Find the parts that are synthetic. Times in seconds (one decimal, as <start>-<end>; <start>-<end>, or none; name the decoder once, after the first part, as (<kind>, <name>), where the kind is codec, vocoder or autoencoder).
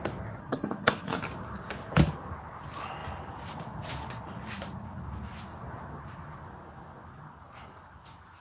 0.4-1.2 (codec, SNAC)